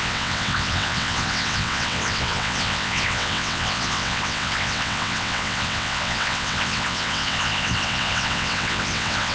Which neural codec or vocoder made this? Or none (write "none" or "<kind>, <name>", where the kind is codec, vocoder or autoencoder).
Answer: vocoder, WaveNeXt